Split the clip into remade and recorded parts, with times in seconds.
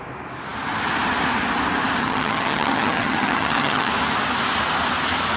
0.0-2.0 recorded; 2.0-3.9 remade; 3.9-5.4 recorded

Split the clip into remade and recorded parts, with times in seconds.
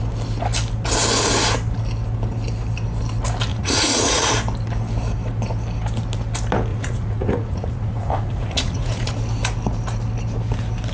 0.0-3.5 recorded; 3.5-4.3 remade; 4.3-6.7 recorded; 6.7-9.1 remade; 9.1-10.9 recorded